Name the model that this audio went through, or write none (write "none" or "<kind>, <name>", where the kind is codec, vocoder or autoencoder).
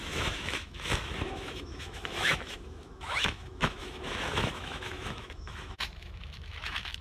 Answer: autoencoder, DAC-VAE